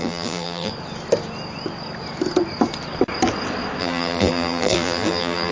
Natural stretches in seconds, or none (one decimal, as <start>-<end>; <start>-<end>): 0.7-3.8